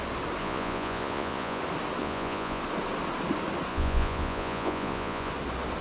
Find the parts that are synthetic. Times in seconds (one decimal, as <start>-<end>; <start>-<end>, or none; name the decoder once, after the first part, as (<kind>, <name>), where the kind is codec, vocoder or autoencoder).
0.4-1.6 (vocoder, Vocos); 2.0-2.6; 3.7-5.3